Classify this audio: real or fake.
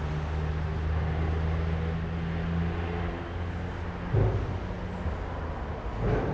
real